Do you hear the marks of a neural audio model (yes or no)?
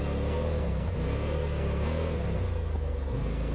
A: yes